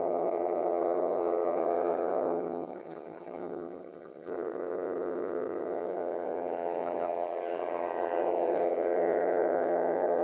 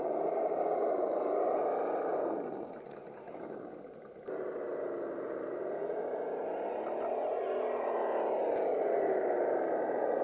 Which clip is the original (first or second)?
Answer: second